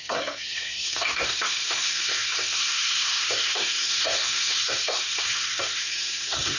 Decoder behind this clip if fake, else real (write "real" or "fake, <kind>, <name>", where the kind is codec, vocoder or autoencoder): fake, codec, SNAC